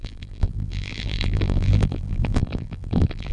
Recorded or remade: remade